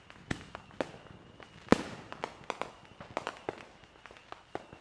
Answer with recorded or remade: recorded